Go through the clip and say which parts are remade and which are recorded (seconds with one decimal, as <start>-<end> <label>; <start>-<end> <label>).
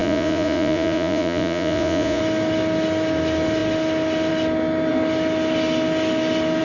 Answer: 0.0-2.2 remade; 2.2-6.6 recorded